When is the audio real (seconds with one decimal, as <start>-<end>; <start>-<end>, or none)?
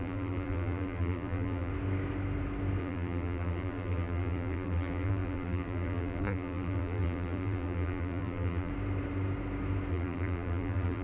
1.7-2.8; 8.7-9.9